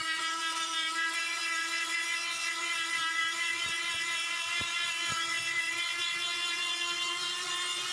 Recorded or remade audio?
remade